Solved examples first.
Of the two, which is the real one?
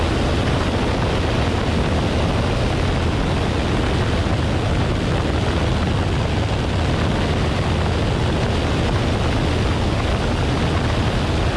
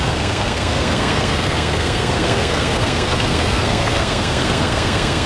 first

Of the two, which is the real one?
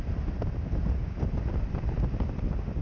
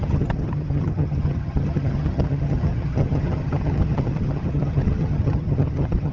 first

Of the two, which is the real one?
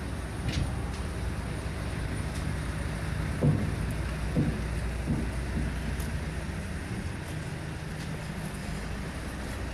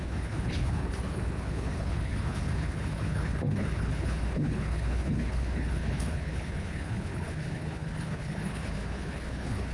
first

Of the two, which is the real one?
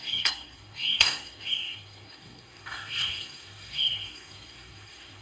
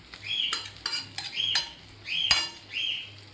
second